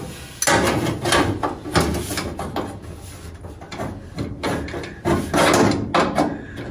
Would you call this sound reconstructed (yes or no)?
no